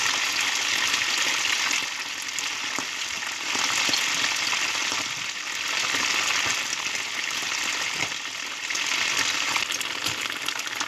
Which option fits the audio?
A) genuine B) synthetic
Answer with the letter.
A